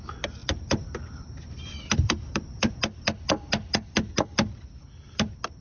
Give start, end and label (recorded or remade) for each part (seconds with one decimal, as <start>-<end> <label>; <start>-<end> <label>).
0.0-0.4 recorded; 0.4-2.7 remade; 2.7-5.6 recorded